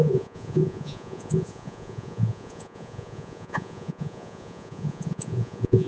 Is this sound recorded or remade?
remade